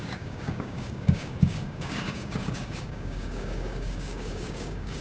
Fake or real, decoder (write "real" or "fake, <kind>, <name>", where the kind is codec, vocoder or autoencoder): fake, codec, DAC